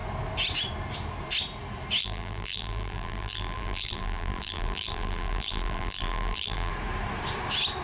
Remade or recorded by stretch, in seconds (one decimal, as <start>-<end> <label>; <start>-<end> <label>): 0.0-2.0 recorded; 2.0-6.7 remade; 6.7-7.8 recorded